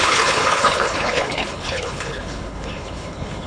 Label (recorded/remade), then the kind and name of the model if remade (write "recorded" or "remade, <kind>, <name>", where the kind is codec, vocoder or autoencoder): remade, codec, HILCodec